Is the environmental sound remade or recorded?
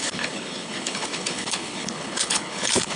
remade